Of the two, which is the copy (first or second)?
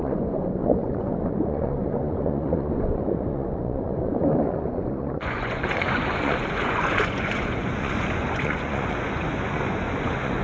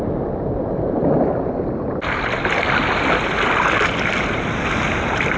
first